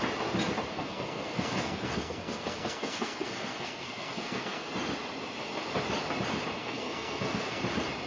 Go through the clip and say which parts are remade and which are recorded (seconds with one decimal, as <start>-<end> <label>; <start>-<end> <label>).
0.0-0.7 recorded; 0.7-4.7 remade; 4.7-6.6 recorded; 6.6-7.6 remade; 7.6-8.1 recorded